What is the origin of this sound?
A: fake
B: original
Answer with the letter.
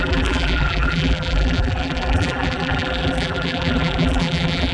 A